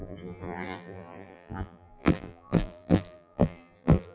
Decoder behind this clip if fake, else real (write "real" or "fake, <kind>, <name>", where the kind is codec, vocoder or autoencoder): fake, vocoder, BigVGAN v2